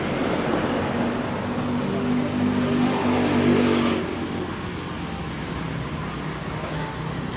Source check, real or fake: real